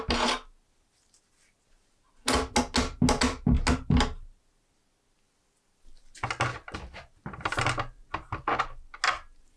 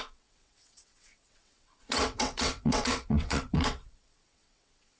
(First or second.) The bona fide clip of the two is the first